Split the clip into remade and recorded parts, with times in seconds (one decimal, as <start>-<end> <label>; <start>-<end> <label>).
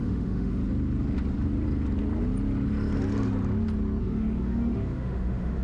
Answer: 0.0-0.6 remade; 0.6-4.0 recorded; 4.0-5.6 remade